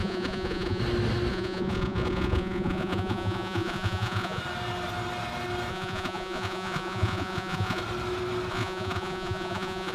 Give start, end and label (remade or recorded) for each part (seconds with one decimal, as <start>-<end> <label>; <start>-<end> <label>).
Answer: 0.0-0.8 remade; 0.8-1.3 recorded; 1.3-4.4 remade; 4.4-5.7 recorded; 5.7-7.8 remade; 7.8-8.5 recorded; 8.5-9.9 remade